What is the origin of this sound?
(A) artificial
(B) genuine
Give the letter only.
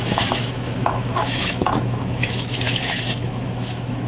A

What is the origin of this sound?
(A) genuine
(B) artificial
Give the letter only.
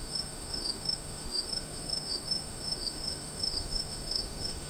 B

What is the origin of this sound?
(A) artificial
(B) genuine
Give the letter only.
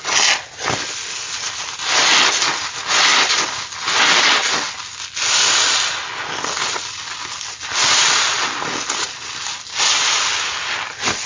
B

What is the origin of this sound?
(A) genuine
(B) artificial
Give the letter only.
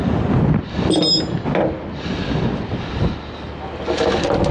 A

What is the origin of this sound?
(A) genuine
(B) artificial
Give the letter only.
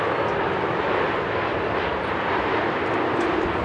A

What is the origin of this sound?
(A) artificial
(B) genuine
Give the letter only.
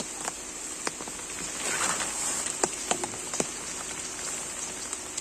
B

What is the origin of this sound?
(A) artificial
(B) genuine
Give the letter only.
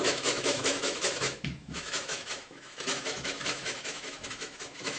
A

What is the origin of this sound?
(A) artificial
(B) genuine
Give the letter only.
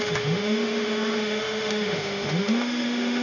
A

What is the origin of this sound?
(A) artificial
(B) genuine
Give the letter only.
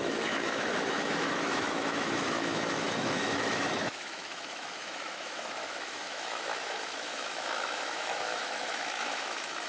A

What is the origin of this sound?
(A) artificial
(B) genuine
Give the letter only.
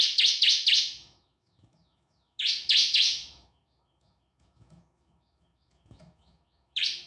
A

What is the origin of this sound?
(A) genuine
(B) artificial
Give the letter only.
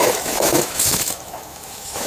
B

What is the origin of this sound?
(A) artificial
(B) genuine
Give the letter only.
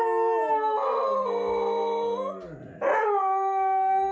B